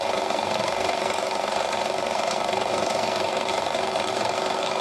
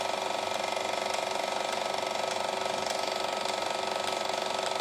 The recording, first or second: second